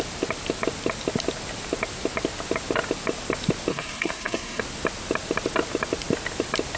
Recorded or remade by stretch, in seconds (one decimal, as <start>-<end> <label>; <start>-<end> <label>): 0.0-3.7 recorded; 3.7-4.6 remade; 4.6-6.8 recorded